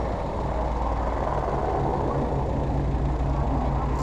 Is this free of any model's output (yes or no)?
yes